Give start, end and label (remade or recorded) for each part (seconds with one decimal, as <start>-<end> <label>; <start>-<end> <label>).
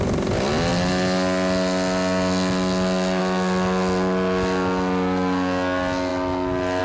0.0-6.8 recorded